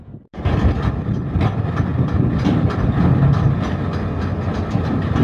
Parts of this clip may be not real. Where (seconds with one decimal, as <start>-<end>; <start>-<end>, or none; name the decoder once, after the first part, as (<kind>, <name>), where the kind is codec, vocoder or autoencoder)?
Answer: none